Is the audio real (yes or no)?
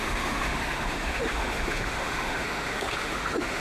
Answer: no